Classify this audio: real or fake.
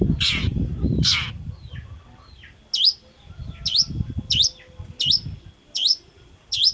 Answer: real